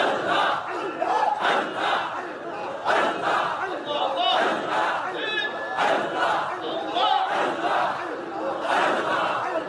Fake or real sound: real